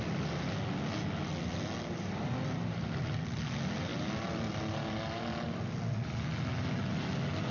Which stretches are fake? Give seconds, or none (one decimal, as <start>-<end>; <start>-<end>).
none